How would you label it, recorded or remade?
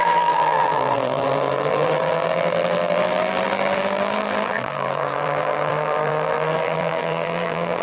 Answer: remade